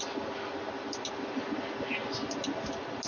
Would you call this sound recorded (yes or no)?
yes